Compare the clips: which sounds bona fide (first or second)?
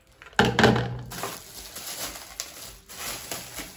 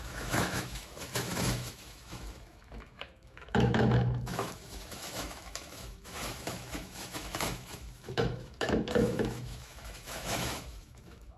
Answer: first